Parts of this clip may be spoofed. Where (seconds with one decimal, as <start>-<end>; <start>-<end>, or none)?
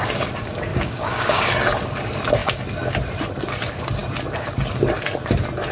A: 0.7-1.5